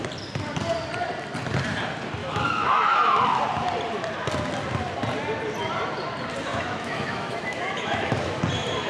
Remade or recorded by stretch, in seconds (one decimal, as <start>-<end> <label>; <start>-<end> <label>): 0.0-2.2 recorded; 2.2-3.4 remade; 3.4-6.5 recorded; 6.5-8.4 remade; 8.4-8.9 recorded